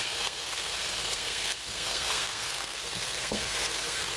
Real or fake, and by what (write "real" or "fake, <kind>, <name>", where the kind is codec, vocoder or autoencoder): fake, codec, SNAC